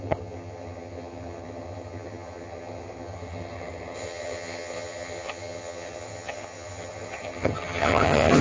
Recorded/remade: remade